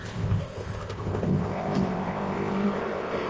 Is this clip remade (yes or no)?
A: yes